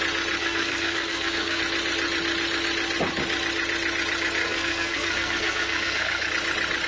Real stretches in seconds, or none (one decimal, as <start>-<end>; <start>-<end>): 0.0-0.4; 1.6-4.4; 6.3-6.9